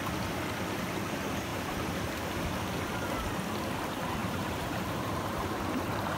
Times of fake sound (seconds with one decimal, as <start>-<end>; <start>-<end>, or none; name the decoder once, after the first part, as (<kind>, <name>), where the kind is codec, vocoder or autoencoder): 1.5-2.3 (vocoder, BigVGAN v2); 4.2-6.2